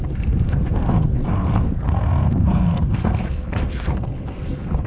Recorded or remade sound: remade